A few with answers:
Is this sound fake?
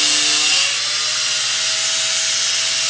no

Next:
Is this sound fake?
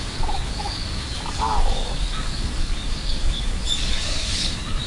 yes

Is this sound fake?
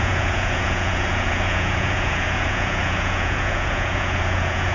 yes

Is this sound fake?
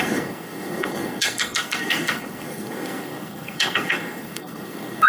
yes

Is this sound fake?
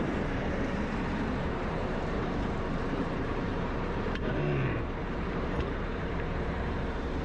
yes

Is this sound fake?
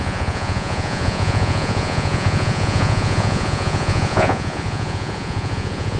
yes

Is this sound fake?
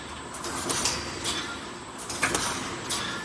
no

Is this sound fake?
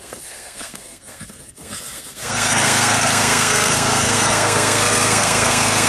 yes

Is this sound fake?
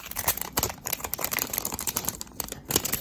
yes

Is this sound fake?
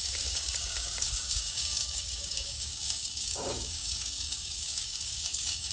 yes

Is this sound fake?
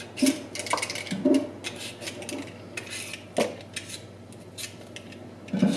no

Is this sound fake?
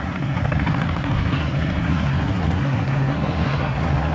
yes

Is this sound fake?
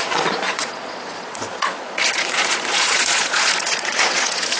yes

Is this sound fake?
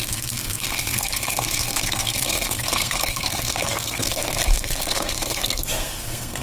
yes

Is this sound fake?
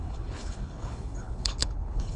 yes